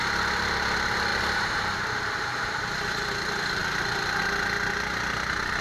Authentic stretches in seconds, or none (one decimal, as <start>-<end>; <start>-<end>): 0.0-5.6